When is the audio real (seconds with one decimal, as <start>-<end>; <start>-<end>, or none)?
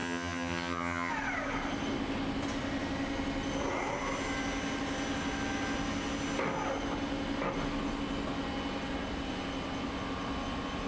1.1-10.9